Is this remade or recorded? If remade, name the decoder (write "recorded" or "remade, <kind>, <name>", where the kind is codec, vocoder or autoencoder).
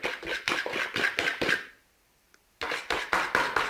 recorded